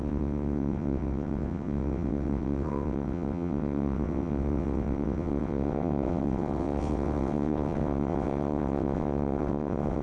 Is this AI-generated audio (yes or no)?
yes